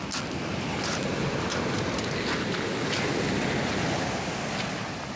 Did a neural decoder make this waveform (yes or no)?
no